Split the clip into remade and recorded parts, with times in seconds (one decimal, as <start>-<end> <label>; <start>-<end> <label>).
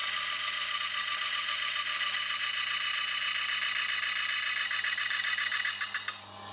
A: 0.0-6.5 recorded